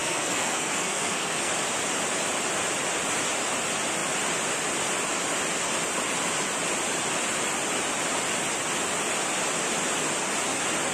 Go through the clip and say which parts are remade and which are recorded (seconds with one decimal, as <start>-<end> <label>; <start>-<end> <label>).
0.0-1.5 remade; 1.5-10.9 recorded